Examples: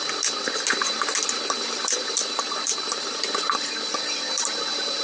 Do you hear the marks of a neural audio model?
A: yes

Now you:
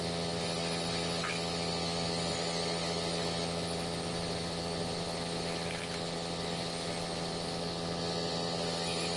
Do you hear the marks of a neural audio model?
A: no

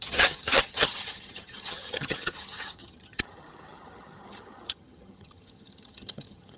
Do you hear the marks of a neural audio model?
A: yes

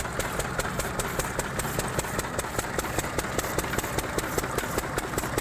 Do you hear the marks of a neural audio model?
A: no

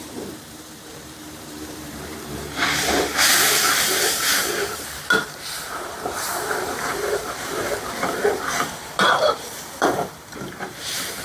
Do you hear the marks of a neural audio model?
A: yes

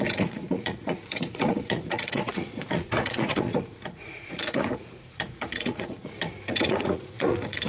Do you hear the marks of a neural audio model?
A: yes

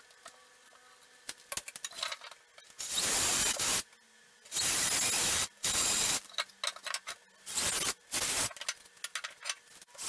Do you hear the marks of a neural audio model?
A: no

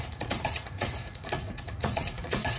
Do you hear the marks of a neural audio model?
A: yes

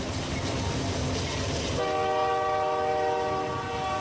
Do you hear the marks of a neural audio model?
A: no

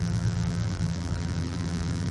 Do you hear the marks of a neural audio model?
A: yes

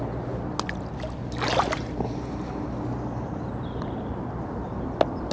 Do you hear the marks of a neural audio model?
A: no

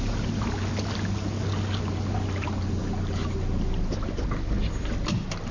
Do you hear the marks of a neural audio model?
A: no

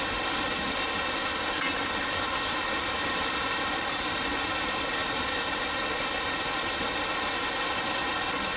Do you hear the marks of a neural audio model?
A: no